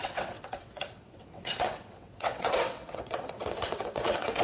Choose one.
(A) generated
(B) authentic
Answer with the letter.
A